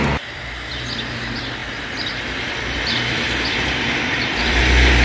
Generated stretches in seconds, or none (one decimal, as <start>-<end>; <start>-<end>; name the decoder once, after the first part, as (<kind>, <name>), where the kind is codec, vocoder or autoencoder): 0.0-0.7 (vocoder, BigVGAN v2); 1.6-4.6